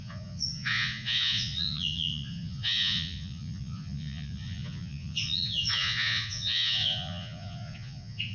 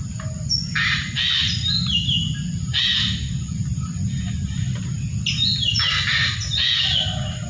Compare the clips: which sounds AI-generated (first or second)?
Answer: first